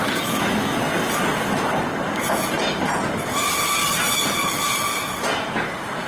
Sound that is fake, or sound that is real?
real